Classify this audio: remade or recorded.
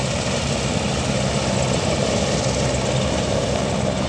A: recorded